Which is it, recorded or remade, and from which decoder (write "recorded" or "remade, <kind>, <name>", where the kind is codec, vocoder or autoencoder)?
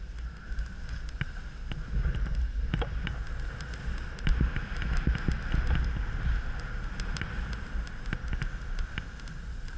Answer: recorded